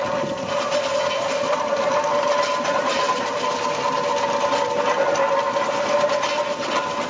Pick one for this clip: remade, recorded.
recorded